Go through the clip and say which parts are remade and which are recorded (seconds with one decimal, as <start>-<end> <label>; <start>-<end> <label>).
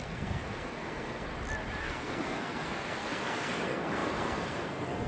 0.0-1.3 remade; 1.3-1.8 recorded; 1.8-5.1 remade